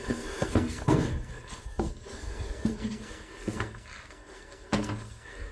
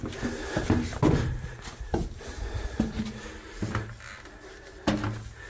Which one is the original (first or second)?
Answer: second